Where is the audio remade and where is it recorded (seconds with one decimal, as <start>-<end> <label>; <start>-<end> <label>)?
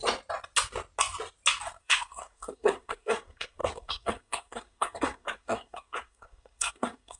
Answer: 0.0-1.8 recorded; 1.8-7.2 remade